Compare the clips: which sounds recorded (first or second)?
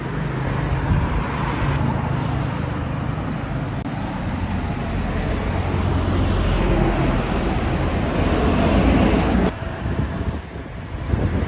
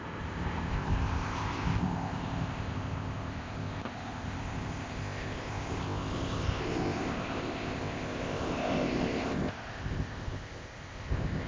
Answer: first